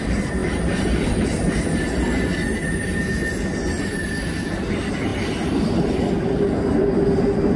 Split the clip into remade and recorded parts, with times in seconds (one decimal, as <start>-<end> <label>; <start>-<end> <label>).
0.0-0.4 remade; 0.4-3.8 recorded; 3.8-7.6 remade